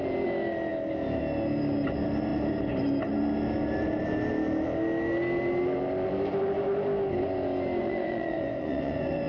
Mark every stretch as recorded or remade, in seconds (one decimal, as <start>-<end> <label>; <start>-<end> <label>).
0.0-7.8 recorded; 7.8-9.3 remade